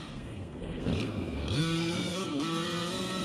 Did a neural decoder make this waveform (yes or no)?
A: yes